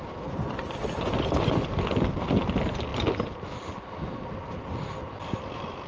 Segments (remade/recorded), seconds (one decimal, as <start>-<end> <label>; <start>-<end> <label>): 0.0-5.9 recorded